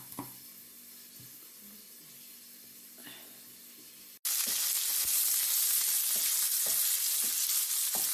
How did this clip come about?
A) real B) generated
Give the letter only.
A